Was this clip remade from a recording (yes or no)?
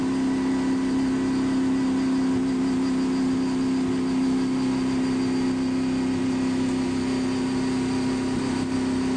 no